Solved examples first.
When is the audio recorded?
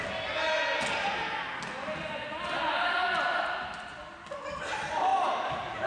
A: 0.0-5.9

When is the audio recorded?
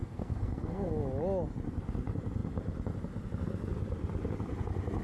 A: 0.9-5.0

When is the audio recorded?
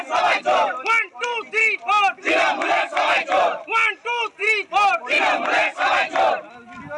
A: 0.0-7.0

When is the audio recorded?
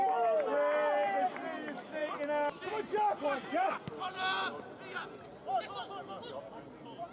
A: 0.0-7.1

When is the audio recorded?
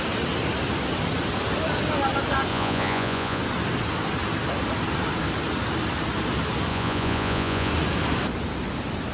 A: 0.0-2.5; 3.4-6.7; 7.7-9.1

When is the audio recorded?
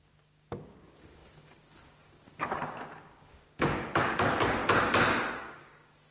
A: 4.6-5.4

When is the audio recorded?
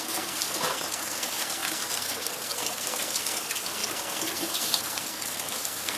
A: none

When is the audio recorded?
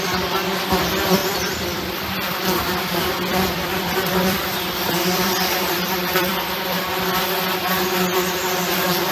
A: 0.0-1.2; 2.0-3.3; 6.3-9.1